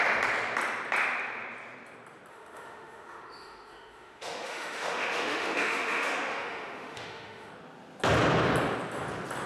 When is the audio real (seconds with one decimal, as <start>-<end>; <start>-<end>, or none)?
0.0-2.3; 7.5-9.5